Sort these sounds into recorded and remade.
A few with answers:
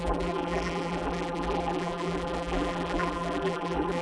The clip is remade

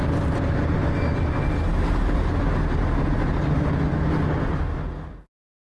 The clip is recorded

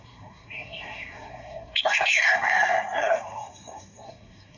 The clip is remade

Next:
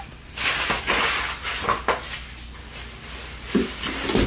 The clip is recorded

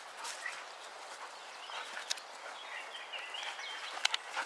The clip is recorded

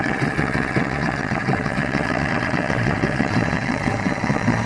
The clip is remade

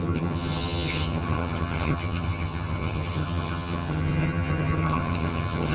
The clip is remade